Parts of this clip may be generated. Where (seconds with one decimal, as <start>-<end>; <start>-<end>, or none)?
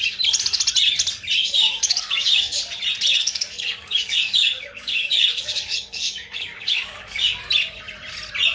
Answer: 1.4-2.6; 3.1-7.4